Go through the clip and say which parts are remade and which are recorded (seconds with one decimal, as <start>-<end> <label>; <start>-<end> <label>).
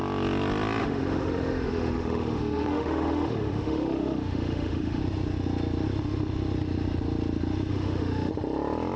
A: 0.0-0.8 recorded; 0.8-5.0 remade; 5.0-7.7 recorded; 7.7-8.3 remade; 8.3-9.0 recorded